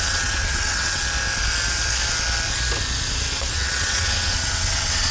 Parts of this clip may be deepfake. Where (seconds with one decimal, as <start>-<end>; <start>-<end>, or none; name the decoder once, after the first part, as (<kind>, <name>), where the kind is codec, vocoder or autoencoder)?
0.0-1.0 (vocoder, WaveNeXt); 3.4-5.1